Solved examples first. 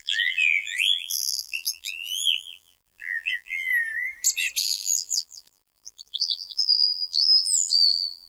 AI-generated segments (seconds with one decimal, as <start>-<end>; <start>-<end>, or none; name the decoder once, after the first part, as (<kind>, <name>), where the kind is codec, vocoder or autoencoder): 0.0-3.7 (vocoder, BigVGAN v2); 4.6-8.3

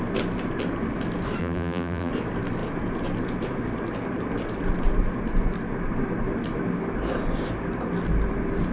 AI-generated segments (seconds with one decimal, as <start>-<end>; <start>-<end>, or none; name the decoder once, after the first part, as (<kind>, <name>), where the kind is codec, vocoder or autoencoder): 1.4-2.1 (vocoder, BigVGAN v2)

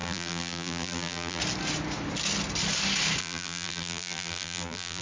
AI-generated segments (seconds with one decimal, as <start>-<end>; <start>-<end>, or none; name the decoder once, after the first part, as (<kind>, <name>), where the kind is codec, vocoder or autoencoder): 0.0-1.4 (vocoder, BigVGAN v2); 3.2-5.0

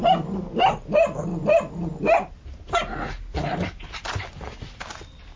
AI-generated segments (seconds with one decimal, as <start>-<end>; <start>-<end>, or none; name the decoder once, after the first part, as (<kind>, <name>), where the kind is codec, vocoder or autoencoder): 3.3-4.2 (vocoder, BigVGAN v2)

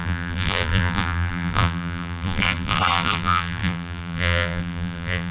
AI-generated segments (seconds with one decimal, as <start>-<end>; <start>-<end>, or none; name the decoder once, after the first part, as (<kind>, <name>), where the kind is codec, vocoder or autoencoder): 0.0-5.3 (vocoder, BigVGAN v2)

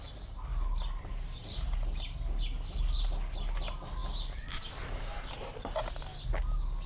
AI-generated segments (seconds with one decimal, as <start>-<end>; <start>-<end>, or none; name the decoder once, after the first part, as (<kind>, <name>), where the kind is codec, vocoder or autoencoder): 0.5-1.1 (vocoder, BigVGAN v2)